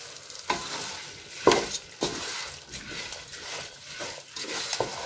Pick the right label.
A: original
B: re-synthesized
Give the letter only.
A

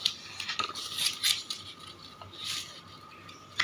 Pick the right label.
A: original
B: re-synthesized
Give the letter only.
A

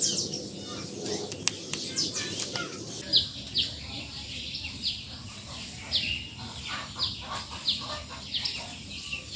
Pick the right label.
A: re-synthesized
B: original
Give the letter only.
B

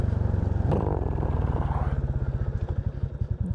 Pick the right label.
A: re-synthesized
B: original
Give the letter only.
B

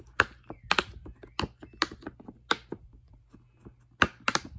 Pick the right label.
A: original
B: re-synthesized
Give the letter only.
A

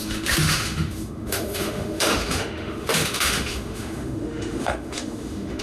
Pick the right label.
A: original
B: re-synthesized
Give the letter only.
B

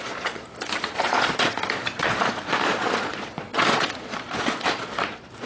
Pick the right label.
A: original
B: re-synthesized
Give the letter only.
B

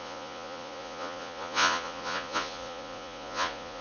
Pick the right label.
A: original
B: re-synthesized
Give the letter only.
B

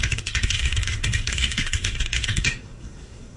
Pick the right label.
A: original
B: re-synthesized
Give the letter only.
B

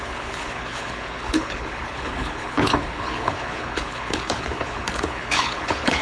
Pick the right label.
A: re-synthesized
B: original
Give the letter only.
A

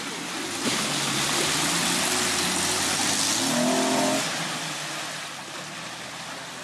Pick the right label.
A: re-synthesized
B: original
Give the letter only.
B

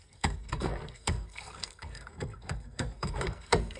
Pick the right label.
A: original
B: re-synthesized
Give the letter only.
B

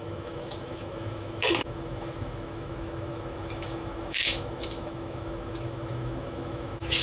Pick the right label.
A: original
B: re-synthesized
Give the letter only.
B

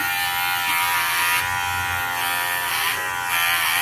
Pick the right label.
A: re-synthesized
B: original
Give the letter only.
B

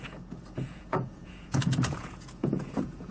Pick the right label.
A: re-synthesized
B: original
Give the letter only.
A